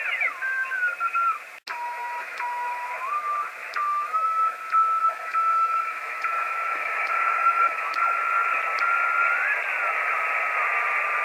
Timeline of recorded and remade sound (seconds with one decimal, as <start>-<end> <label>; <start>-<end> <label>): 0.0-1.7 recorded; 1.7-2.9 remade; 2.9-3.6 recorded; 3.6-4.6 remade; 4.6-5.0 recorded; 5.0-8.2 remade; 8.2-11.2 recorded